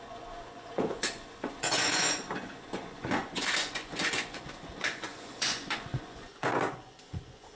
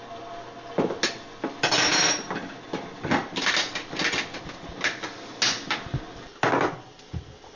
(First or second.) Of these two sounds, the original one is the second